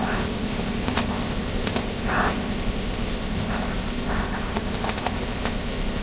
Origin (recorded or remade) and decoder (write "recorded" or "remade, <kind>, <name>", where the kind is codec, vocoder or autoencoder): remade, codec, ZipCodec